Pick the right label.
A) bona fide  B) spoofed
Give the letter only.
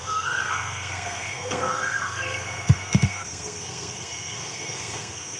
B